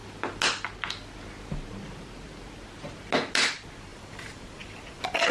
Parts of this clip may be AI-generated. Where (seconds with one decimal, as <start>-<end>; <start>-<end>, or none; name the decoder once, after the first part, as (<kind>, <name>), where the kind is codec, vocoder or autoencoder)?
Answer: 3.9-5.3 (vocoder, BigVGAN v2)